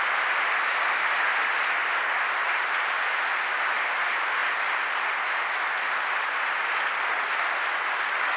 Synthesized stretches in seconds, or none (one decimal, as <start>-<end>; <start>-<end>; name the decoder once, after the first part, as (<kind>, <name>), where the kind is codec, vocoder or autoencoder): 2.4-3.5 (vocoder, BigVGAN v2)